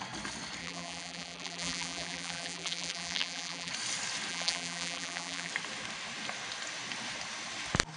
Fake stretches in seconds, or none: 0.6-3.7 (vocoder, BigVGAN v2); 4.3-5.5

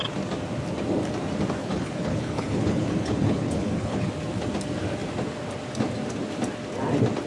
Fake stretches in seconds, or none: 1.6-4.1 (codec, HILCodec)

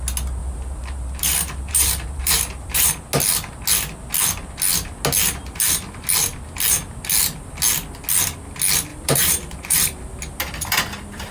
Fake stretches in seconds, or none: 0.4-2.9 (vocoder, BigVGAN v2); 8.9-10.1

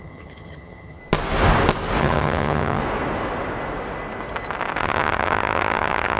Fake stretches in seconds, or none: 0.0-1.0 (vocoder, HiFi-GAN); 2.0-2.8; 4.8-6.2